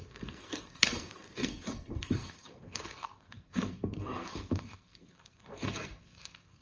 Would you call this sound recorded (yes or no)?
no